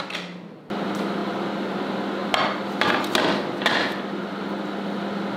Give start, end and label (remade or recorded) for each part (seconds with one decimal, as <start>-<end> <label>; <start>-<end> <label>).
0.0-5.4 recorded